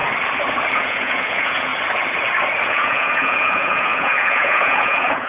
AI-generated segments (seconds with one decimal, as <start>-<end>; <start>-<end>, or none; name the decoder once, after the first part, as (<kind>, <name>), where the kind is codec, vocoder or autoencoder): 0.7-1.7 (vocoder, Vocos); 2.6-5.3